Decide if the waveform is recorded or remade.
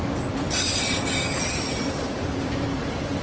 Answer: recorded